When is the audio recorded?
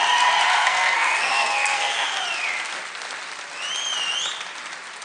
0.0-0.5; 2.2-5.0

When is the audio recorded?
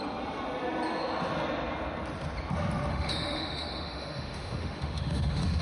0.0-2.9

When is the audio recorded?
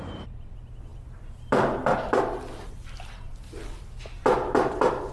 0.0-0.9; 2.2-5.1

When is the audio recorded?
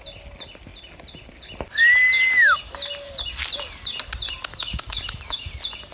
0.0-4.5; 5.5-5.9